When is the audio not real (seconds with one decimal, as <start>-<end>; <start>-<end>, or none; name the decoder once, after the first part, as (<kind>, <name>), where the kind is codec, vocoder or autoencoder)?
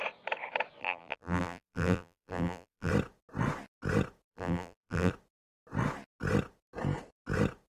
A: 0.8-2.9 (vocoder, BigVGAN v2); 4.3-5.1